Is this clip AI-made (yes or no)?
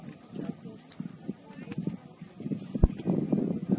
no